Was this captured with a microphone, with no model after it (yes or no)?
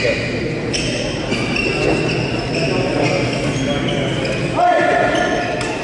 yes